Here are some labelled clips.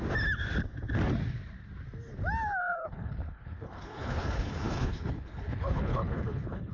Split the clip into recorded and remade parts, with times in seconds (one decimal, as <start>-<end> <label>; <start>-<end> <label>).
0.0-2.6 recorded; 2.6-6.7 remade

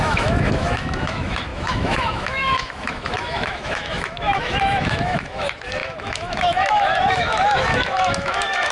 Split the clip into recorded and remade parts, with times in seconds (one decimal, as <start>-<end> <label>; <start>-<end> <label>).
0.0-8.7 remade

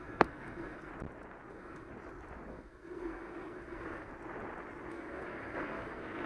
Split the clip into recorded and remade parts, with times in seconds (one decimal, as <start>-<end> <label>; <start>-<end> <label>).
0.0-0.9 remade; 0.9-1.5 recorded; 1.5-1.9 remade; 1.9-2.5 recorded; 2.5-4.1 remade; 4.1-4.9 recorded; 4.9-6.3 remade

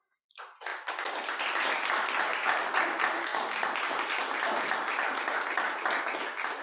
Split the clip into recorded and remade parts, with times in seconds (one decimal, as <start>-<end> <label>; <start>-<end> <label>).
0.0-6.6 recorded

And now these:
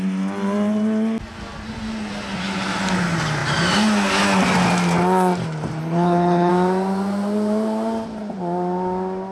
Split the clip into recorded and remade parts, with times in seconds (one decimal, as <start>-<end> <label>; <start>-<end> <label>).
0.0-5.8 recorded; 5.8-6.5 remade; 6.5-9.3 recorded

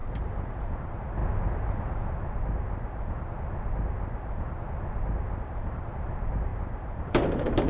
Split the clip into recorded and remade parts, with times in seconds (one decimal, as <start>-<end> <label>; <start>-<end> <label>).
0.0-1.2 remade; 1.2-5.4 recorded; 5.4-7.7 remade

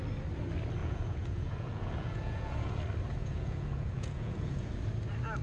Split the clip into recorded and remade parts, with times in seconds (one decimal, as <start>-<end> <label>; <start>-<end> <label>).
0.0-0.8 recorded; 0.8-2.8 remade; 2.8-3.2 recorded; 3.2-4.7 remade; 4.7-5.4 recorded